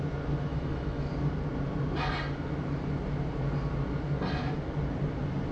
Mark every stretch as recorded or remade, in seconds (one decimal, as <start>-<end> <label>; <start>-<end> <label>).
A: 0.0-0.5 recorded; 0.5-1.1 remade; 1.1-5.5 recorded